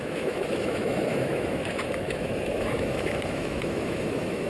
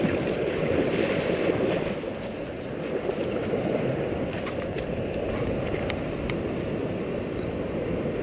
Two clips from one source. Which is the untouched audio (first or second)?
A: second